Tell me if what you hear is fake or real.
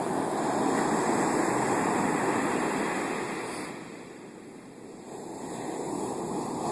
real